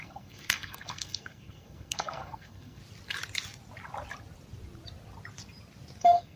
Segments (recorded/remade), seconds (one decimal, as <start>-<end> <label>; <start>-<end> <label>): 0.0-2.8 remade; 2.8-6.0 recorded; 6.0-6.4 remade